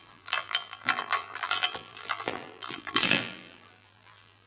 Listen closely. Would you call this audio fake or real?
fake